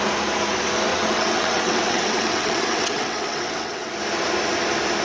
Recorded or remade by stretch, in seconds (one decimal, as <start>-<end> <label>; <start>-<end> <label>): 0.0-0.9 recorded; 0.9-3.9 remade; 3.9-5.0 recorded